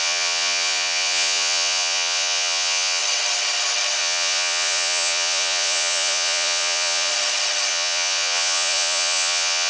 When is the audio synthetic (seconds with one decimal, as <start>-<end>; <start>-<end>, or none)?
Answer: 0.0-3.0; 4.0-7.1; 7.7-9.7

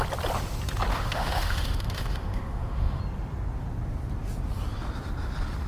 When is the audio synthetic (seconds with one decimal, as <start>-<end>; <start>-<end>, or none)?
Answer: 0.9-3.0

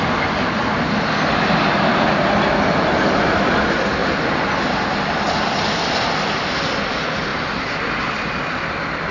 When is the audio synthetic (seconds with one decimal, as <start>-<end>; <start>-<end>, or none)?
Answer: none

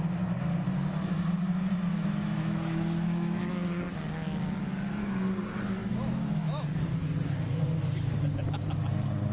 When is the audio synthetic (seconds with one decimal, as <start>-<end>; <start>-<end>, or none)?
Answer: 1.9-3.5; 5.8-6.6

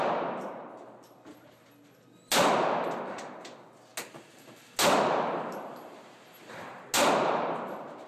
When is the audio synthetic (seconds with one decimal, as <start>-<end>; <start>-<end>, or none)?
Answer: none